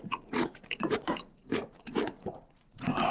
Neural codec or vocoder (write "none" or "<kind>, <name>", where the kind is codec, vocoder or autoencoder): vocoder, Vocos